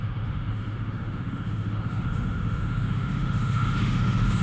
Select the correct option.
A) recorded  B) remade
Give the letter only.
B